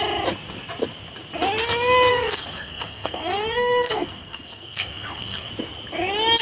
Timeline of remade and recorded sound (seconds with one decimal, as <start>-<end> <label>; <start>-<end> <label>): 0.0-2.1 recorded; 2.1-5.5 remade; 5.5-6.4 recorded